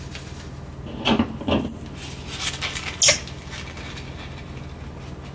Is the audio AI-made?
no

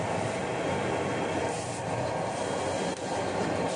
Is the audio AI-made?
no